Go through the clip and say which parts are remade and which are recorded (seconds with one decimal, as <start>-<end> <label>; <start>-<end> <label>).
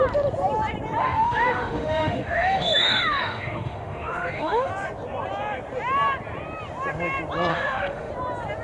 0.0-1.0 recorded; 1.0-4.7 remade; 4.7-7.5 recorded; 7.5-8.1 remade; 8.1-8.6 recorded